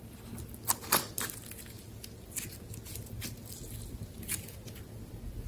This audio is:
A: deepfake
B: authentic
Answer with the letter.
B